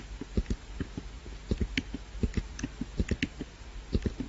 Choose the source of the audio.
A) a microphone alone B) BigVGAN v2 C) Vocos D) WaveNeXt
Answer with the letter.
A